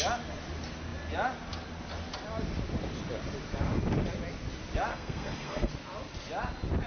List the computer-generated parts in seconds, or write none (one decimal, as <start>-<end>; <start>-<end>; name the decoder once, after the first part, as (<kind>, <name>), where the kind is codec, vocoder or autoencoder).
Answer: 4.9-5.7 (codec, SNAC)